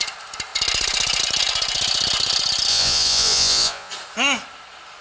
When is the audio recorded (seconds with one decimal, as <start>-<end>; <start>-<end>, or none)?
0.0-2.7; 3.9-5.0